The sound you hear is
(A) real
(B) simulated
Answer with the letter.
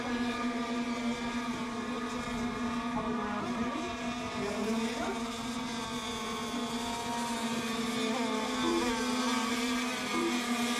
A